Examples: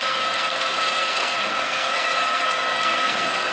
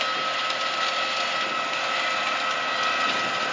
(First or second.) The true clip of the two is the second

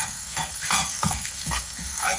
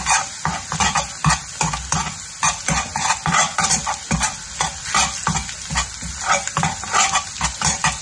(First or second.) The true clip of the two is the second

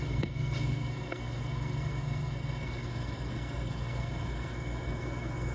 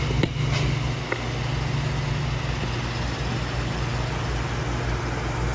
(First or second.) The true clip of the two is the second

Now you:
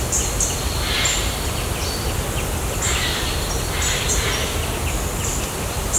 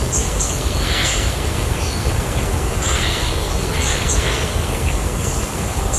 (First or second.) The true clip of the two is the first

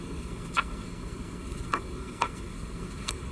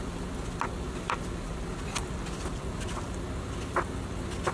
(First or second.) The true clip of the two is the second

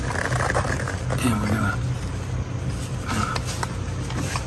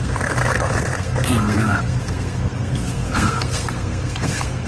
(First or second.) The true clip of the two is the first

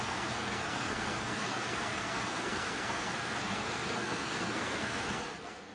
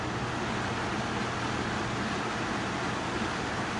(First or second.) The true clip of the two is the second